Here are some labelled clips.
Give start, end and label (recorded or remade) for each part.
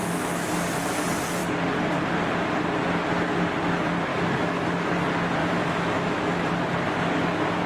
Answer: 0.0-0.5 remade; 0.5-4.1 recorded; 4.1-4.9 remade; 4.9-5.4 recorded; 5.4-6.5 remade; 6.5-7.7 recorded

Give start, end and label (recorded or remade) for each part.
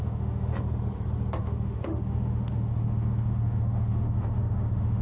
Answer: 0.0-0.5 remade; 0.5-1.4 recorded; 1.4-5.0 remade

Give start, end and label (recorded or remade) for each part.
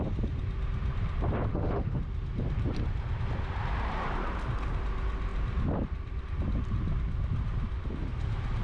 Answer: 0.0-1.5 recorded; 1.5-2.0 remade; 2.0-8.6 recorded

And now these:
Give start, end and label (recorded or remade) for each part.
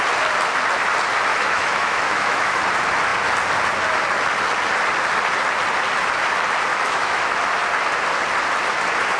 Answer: 0.0-1.3 recorded; 1.3-2.7 remade; 2.7-6.7 recorded; 6.7-7.3 remade; 7.3-9.2 recorded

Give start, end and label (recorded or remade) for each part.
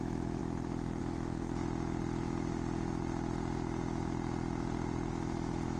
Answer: 0.0-0.4 remade; 0.4-1.0 recorded; 1.0-1.6 remade; 1.6-5.1 recorded; 5.1-5.8 remade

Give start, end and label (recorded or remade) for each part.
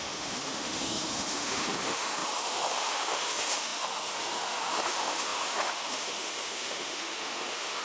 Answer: 0.0-7.8 remade